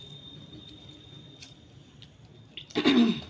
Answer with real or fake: real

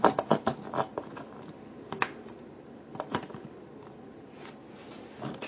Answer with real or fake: real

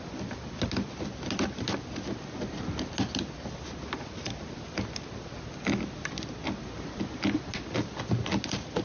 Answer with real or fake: real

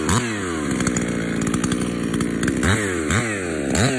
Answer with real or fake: real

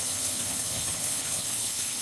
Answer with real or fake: fake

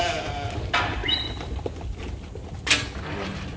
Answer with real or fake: real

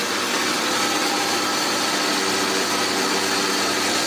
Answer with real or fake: real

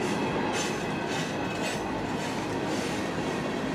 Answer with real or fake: real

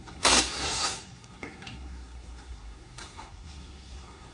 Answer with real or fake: fake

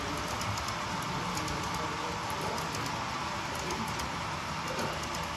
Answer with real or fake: real